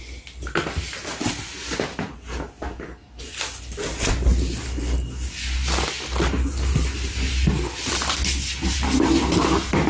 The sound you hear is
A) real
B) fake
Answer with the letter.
A